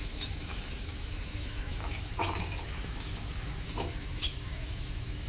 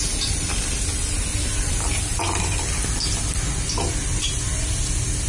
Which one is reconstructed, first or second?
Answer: first